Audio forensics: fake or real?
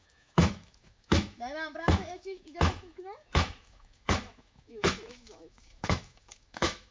fake